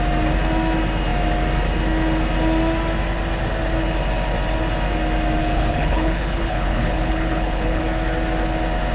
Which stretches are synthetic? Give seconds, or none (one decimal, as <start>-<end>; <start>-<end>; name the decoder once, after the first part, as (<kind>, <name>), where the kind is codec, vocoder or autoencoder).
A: 5.4-7.8 (codec, HILCodec)

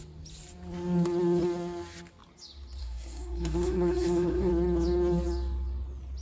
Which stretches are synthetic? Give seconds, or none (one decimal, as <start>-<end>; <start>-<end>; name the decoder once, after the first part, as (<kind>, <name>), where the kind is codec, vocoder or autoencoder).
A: 2.8-4.5 (codec, SNAC)